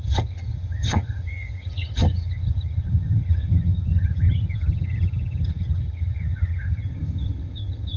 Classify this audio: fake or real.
fake